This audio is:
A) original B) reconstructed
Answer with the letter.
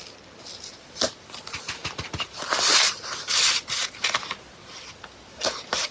A